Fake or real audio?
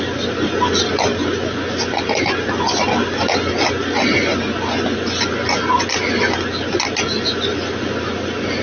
real